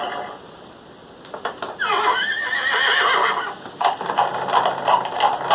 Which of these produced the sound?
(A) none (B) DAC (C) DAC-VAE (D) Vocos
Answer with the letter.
A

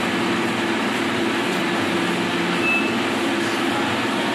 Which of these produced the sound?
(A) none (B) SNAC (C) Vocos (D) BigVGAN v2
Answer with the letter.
A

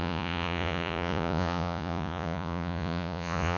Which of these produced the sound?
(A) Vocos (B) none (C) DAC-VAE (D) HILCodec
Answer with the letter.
A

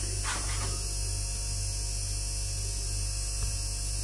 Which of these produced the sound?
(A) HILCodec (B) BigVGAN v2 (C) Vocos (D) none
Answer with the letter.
D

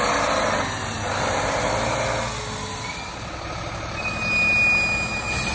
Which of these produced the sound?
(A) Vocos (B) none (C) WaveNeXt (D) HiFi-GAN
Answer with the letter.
B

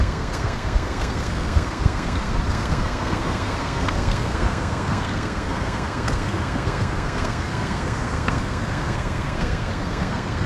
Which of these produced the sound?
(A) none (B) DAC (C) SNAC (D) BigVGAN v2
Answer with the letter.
C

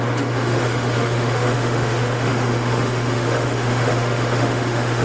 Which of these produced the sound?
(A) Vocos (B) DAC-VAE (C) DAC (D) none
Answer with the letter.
B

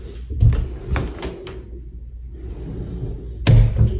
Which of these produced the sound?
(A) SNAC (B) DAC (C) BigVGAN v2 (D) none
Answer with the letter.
D